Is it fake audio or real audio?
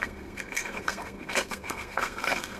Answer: fake